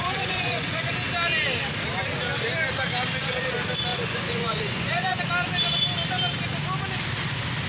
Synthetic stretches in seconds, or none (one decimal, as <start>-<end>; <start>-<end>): 0.0-0.9; 3.9-5.2